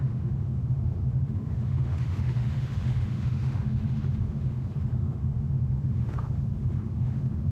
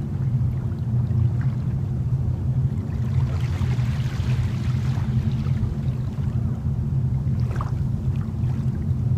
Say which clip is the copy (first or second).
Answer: first